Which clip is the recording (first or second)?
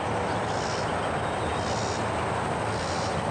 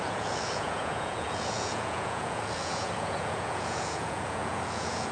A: first